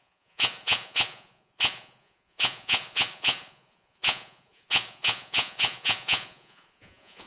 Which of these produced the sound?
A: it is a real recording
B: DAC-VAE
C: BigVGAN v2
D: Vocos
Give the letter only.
D